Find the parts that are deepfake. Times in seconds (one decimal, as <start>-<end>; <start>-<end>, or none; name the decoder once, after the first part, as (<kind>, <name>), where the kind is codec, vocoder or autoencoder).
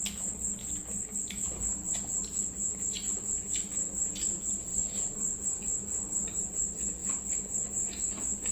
4.7-6.4 (vocoder, BigVGAN v2)